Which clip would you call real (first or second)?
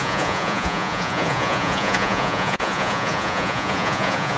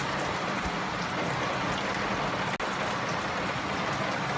second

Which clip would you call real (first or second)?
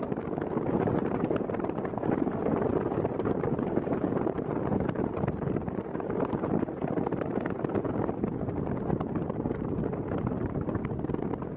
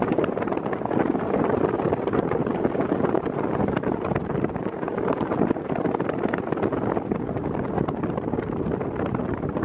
second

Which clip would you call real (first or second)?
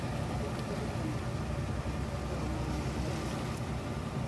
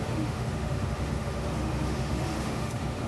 first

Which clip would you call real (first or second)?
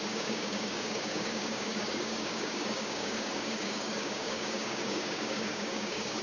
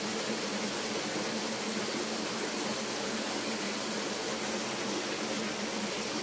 second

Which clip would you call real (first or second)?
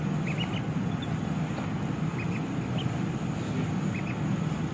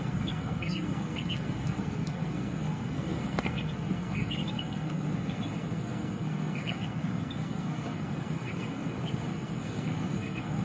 first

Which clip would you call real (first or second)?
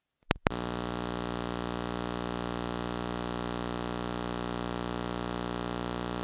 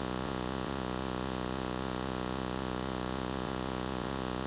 first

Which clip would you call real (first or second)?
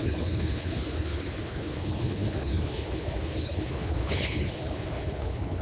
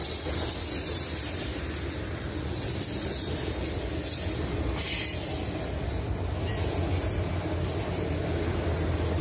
second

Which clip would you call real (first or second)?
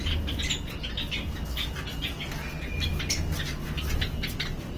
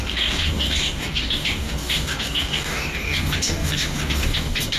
first